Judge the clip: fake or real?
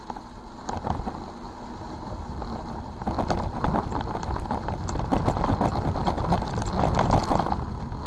real